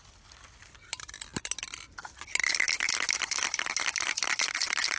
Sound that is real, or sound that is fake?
real